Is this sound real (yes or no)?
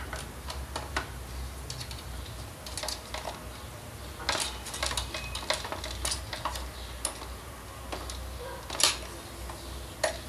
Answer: yes